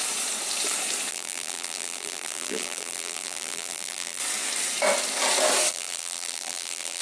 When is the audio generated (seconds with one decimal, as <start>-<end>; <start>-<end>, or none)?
1.1-4.2; 5.7-7.0